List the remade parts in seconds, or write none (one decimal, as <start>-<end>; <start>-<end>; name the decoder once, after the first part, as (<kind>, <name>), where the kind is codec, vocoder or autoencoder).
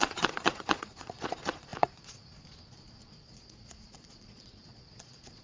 0.0-5.4 (vocoder, Vocos)